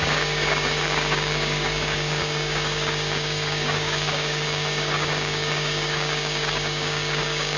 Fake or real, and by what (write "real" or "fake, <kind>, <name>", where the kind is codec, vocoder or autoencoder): fake, codec, DAC